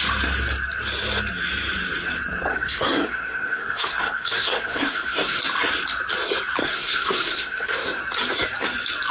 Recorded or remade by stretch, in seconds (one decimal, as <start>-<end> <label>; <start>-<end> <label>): 0.0-2.5 recorded; 2.5-5.4 remade; 5.4-6.6 recorded; 6.6-8.0 remade; 8.0-9.1 recorded